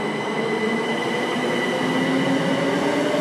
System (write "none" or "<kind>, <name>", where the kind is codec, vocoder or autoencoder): none